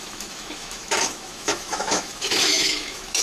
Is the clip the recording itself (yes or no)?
no